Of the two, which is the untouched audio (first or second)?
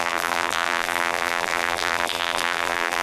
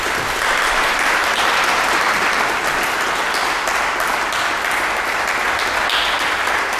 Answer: second